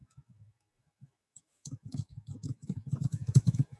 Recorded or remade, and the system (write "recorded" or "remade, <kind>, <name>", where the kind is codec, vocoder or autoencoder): remade, autoencoder, DAC-VAE